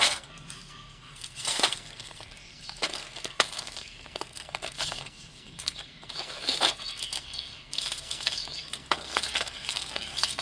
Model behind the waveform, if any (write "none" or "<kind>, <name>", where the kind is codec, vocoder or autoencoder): codec, SNAC